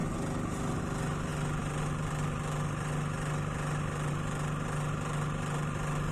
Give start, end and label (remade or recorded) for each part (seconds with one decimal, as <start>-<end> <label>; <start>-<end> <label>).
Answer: 0.0-6.1 recorded